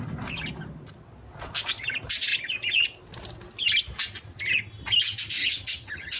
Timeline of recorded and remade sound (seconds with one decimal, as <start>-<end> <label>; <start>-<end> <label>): 0.0-5.4 recorded; 5.4-6.2 remade